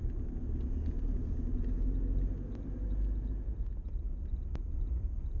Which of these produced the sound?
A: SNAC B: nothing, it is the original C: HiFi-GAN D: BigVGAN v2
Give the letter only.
B